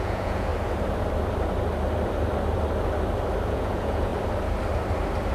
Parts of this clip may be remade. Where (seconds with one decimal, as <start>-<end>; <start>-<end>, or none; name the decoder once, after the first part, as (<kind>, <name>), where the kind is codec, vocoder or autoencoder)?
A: 0.0-0.5 (vocoder, Vocos); 3.5-4.1